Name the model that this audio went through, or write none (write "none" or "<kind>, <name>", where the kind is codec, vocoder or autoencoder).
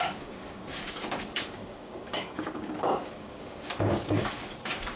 codec, DAC